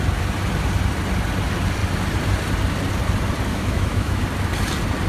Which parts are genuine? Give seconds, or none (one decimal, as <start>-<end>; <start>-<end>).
0.0-3.5; 4.2-5.1